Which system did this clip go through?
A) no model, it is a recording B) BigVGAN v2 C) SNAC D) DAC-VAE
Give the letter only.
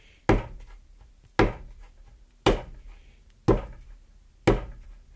A